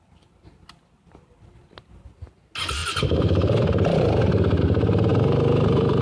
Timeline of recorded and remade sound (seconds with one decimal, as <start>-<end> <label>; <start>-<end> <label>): 0.0-2.8 recorded; 2.8-4.6 remade; 4.6-5.1 recorded; 5.1-6.0 remade